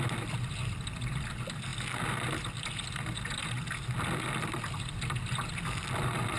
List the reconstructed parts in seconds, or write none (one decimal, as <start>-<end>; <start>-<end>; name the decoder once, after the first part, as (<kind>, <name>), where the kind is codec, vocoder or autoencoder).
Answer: none